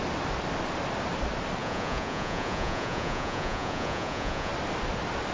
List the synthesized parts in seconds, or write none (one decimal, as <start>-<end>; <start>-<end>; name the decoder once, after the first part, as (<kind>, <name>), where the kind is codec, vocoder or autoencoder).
1.6-4.5 (vocoder, Vocos)

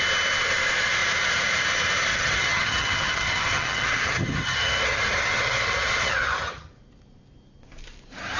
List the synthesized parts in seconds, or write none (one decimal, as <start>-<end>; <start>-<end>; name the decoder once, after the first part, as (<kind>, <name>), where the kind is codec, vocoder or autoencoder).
2.1-6.7 (vocoder, HiFi-GAN)

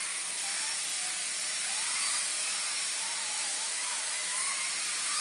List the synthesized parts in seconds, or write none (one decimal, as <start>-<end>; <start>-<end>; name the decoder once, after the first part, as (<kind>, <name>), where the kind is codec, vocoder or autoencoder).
3.2-4.6 (autoencoder, DAC-VAE)

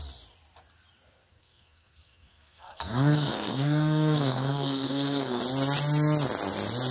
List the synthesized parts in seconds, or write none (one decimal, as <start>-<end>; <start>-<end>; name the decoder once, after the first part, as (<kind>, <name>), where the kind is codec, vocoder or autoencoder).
1.3-5.4 (codec, SNAC)